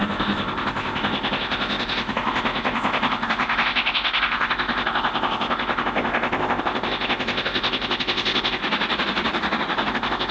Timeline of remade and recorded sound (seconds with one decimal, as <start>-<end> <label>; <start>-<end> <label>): 0.0-8.6 remade; 8.6-9.9 recorded; 9.9-10.3 remade